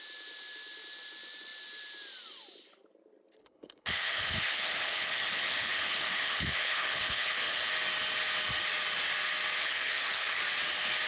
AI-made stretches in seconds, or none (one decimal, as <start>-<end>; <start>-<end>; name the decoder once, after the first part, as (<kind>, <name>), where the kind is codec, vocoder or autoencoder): 3.4-7.7 (codec, HILCodec); 9.6-10.4